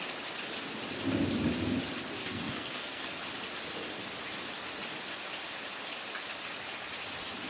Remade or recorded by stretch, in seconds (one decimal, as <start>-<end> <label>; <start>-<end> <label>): 0.0-2.2 recorded; 2.2-3.2 remade; 3.2-7.5 recorded